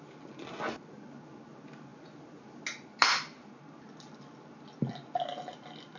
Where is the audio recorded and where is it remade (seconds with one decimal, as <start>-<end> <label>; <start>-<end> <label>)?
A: 0.0-6.0 recorded